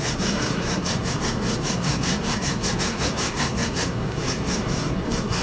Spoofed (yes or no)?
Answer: yes